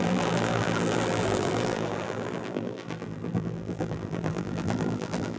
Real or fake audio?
fake